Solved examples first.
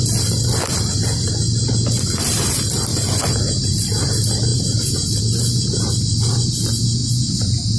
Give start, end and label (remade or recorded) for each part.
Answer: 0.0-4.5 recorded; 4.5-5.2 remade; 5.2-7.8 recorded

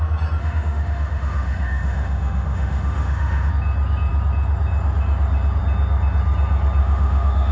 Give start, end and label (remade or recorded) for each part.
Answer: 0.0-0.4 recorded; 0.4-3.5 remade; 3.5-6.8 recorded; 6.8-7.5 remade

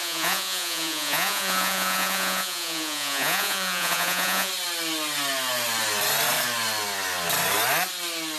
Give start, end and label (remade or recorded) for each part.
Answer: 0.0-4.5 remade; 4.5-8.4 recorded

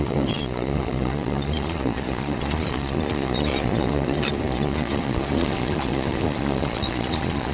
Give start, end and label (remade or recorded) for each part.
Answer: 0.0-7.5 remade